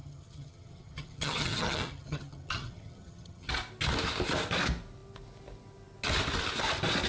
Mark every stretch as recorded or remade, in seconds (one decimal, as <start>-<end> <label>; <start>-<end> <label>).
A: 0.0-3.5 remade; 3.5-7.1 recorded